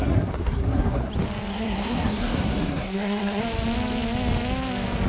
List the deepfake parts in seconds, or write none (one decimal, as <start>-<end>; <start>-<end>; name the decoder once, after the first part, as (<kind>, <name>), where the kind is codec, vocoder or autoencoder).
0.0-1.1 (codec, SNAC); 1.5-3.4

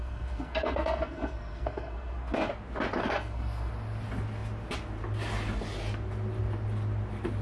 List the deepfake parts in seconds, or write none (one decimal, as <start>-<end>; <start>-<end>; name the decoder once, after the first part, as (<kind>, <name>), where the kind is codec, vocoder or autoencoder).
0.0-2.5 (codec, SNAC); 3.0-3.7

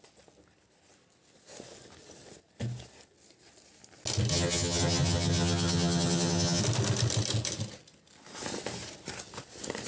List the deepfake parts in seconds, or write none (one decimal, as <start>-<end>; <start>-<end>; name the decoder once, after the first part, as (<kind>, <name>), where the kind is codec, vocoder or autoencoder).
4.3-6.6 (vocoder, HiFi-GAN)

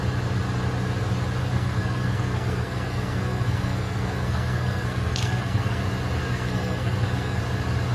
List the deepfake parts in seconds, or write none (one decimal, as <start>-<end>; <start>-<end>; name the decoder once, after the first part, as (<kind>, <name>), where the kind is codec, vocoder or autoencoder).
1.4-5.8 (codec, SNAC); 6.2-7.4

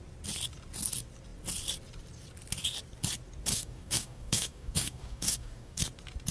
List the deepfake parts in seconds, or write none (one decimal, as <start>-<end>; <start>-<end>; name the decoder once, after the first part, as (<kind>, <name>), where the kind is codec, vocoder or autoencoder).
3.5-5.8 (codec, DAC)

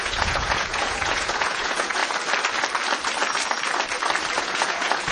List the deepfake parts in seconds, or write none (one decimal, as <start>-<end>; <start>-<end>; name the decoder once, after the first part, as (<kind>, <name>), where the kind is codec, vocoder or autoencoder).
0.0-2.0 (vocoder, Vocos); 4.4-5.1